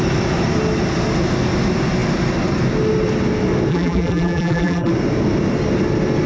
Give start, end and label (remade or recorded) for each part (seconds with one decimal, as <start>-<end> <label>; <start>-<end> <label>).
0.0-3.7 recorded; 3.7-4.9 remade; 4.9-6.3 recorded